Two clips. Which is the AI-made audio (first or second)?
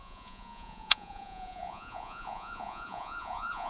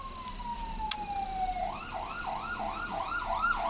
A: first